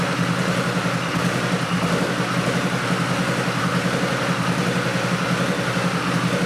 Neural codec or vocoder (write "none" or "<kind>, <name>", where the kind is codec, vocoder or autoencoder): none